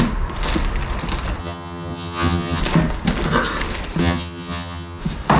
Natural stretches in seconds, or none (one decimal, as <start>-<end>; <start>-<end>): 0.0-1.4; 2.6-4.0; 5.0-5.4